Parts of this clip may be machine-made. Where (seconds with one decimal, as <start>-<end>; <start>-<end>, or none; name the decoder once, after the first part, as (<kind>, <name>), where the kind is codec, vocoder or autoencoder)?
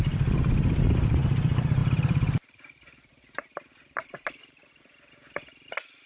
1.8-3.1 (vocoder, BigVGAN v2)